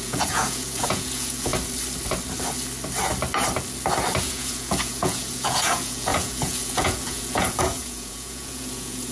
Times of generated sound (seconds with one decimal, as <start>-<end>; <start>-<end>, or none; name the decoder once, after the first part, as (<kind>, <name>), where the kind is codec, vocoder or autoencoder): 0.0-1.5 (vocoder, Vocos); 4.2-9.1